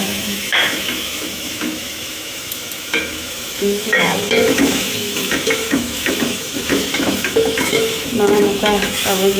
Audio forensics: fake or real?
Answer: fake